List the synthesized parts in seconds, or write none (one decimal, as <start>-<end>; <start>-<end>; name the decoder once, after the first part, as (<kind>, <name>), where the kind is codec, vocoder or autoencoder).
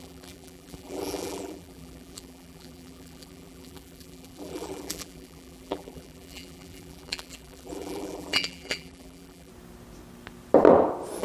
0.0-9.5 (vocoder, BigVGAN v2)